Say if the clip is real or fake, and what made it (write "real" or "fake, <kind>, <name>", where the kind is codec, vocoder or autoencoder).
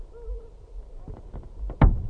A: real